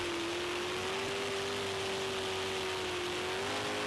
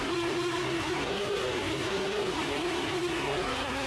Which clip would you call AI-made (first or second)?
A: second